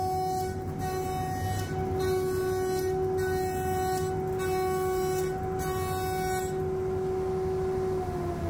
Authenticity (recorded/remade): recorded